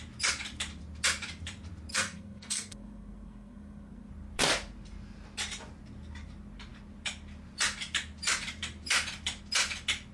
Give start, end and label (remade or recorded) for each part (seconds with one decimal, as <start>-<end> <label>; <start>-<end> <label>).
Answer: 0.0-1.9 recorded; 1.9-4.1 remade; 4.1-10.1 recorded